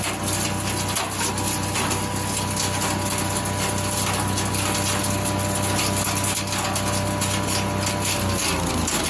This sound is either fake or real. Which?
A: real